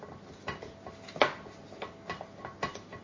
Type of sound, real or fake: real